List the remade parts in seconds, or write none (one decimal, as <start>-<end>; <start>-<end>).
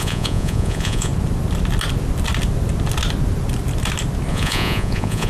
0.0-1.1; 4.3-5.3